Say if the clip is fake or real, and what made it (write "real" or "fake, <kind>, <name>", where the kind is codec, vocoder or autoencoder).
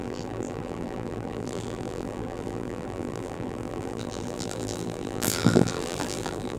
fake, vocoder, BigVGAN v2